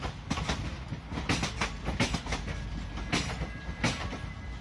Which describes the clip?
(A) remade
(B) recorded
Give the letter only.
B